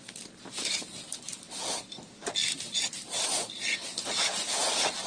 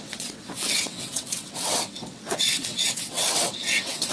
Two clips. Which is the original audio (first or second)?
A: first